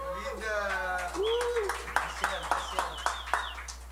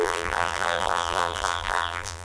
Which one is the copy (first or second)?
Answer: second